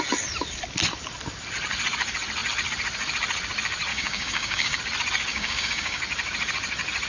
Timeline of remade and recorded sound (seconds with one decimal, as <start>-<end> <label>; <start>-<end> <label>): 0.0-3.9 recorded; 3.9-4.8 remade; 4.8-5.3 recorded; 5.3-6.0 remade; 6.0-7.1 recorded

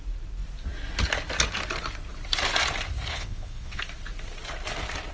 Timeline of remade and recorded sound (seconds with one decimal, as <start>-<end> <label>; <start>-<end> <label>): 0.0-3.1 recorded; 3.1-3.8 remade; 3.8-5.1 recorded

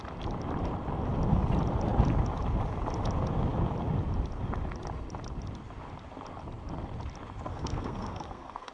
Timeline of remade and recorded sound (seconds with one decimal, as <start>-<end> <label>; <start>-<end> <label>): 0.0-7.5 recorded; 7.5-8.7 remade

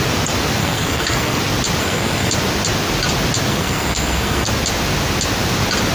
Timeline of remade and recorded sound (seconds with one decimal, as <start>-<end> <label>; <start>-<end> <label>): 0.0-0.6 recorded; 0.6-1.4 remade; 1.4-1.8 recorded; 1.8-2.3 remade; 2.3-3.5 recorded; 3.5-4.5 remade; 4.5-5.9 recorded

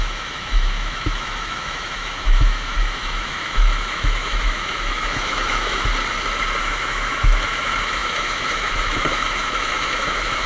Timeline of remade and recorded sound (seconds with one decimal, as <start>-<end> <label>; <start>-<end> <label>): 0.0-5.9 remade; 5.9-6.6 recorded; 6.6-10.5 remade